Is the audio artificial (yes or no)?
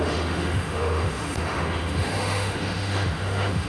yes